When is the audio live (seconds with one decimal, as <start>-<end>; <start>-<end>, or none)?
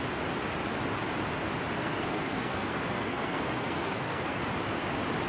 0.0-1.8; 4.4-5.3